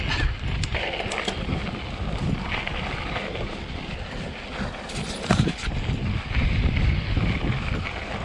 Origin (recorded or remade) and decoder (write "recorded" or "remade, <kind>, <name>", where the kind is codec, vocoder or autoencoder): recorded